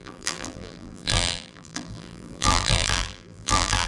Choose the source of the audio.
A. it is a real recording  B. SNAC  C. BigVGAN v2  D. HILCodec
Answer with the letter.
C